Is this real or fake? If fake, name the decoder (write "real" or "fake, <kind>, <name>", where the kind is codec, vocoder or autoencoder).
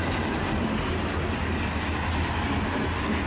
real